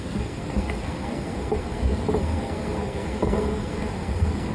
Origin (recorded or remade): remade